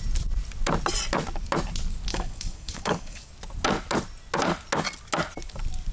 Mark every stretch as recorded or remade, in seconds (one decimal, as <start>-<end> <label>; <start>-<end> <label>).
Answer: 0.0-2.1 recorded; 2.1-3.3 remade; 3.3-5.9 recorded